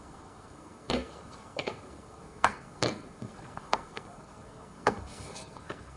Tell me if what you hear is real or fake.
fake